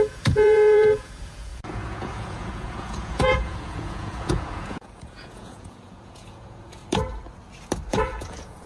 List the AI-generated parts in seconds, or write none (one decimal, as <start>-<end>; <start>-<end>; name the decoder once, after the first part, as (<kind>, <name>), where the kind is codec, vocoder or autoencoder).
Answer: 0.0-6.8 (vocoder, Vocos); 7.9-8.7